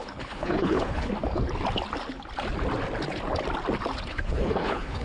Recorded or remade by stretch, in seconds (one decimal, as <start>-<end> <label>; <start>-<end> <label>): 0.0-1.1 remade; 1.1-4.1 recorded; 4.1-5.0 remade